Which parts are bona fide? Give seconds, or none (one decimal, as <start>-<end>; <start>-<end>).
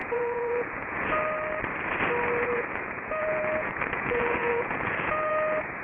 1.2-2.4; 5.3-5.8